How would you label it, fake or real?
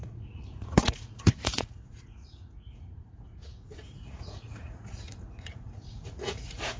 fake